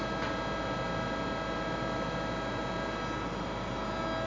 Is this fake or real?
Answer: real